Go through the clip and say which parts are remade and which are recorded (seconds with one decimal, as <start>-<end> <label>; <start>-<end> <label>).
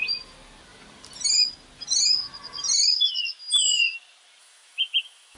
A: 0.0-4.4 recorded; 4.4-5.4 remade